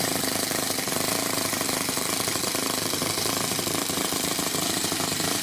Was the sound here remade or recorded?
remade